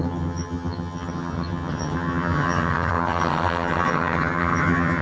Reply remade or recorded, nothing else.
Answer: remade